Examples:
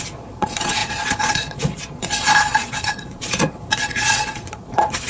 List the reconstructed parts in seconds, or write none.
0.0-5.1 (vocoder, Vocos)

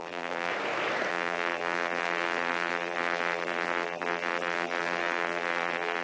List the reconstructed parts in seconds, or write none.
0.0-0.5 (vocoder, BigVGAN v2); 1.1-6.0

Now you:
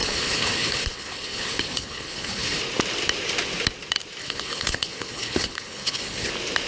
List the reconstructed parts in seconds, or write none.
0.0-2.6 (codec, HILCodec); 4.2-6.3

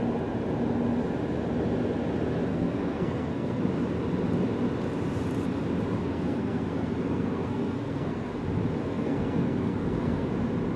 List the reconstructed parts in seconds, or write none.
2.5-3.6 (codec, SNAC); 6.0-8.3; 8.8-10.3

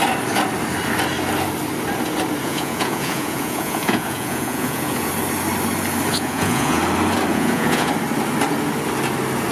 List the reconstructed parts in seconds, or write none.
2.4-5.1 (vocoder, Vocos); 6.1-6.8; 7.3-7.9